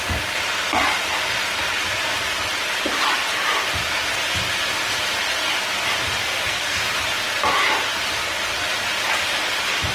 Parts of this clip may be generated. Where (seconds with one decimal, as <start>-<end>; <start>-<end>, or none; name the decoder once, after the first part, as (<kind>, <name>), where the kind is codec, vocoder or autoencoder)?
6.2-6.8 (codec, SNAC)